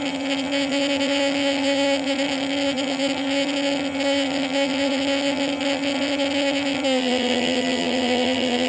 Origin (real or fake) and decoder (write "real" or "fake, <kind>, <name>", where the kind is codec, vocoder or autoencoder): fake, vocoder, HiFi-GAN